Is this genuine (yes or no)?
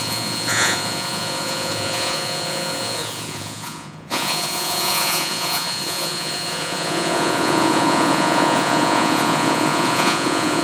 no